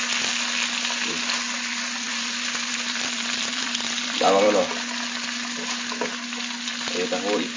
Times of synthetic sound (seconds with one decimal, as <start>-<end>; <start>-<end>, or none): 1.7-4.6